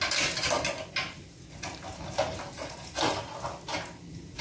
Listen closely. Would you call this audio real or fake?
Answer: real